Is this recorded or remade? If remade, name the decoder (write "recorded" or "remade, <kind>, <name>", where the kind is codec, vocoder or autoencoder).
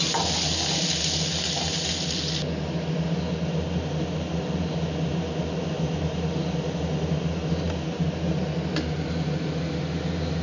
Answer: recorded